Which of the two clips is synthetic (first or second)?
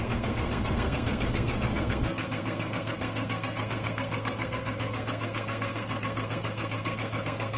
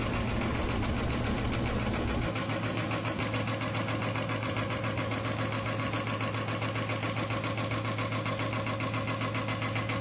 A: first